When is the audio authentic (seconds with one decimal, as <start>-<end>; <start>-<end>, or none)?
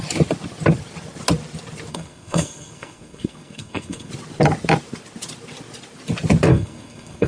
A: 0.0-1.9; 4.1-6.5